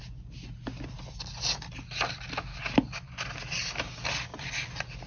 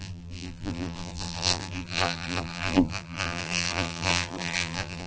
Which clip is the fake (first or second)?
second